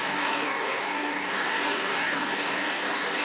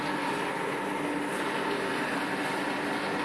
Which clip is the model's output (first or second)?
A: first